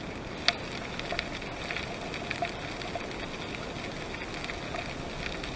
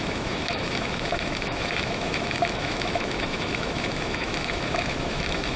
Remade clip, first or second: second